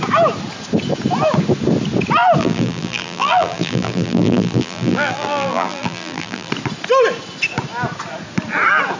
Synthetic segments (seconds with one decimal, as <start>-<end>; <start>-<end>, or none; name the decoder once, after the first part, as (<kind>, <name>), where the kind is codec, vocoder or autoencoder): 2.4-6.5 (vocoder, BigVGAN v2)